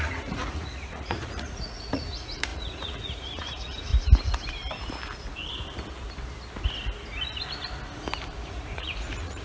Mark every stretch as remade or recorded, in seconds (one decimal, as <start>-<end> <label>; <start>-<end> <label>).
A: 0.0-3.9 remade; 3.9-8.4 recorded; 8.4-9.4 remade